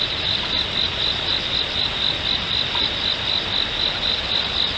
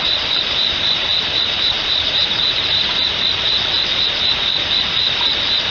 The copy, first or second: second